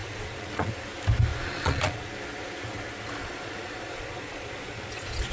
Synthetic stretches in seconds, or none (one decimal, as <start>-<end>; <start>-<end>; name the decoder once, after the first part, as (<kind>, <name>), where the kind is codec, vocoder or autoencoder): 0.0-0.7 (vocoder, Vocos); 1.3-2.1; 3.2-5.3